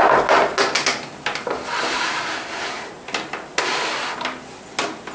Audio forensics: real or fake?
real